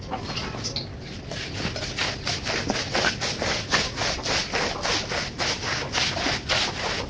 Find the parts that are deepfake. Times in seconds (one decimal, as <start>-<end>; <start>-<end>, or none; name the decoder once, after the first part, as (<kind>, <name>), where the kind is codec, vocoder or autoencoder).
none